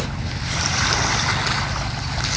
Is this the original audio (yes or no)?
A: yes